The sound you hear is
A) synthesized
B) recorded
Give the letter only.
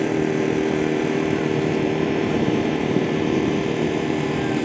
A